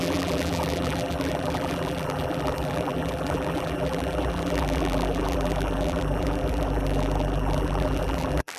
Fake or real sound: fake